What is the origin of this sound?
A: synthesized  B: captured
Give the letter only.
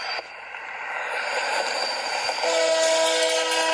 B